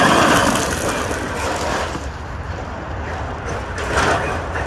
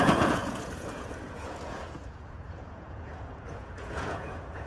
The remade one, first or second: second